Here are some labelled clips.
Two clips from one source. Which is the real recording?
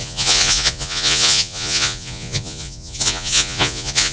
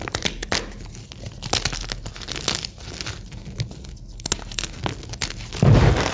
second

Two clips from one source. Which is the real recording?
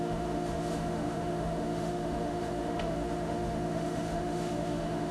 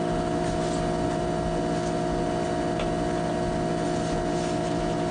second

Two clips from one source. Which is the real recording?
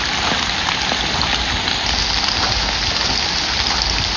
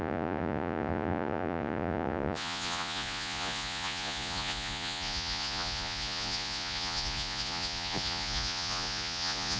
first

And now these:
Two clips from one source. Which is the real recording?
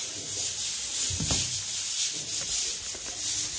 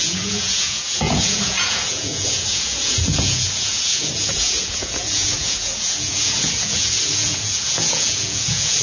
first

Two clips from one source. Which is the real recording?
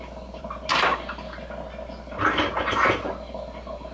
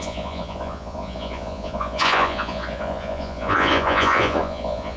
first